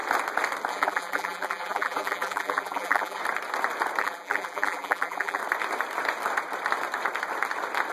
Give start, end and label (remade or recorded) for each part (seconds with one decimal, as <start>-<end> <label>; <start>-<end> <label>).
0.0-0.7 recorded; 0.7-3.2 remade; 3.2-4.0 recorded; 4.0-5.4 remade; 5.4-7.9 recorded